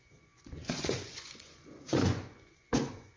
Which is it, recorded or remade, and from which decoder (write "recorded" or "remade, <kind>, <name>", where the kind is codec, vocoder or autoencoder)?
remade, vocoder, Vocos